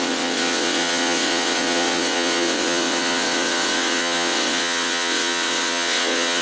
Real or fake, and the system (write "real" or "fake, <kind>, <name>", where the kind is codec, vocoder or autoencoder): fake, vocoder, WaveNeXt